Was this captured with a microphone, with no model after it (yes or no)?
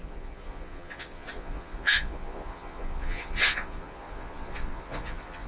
no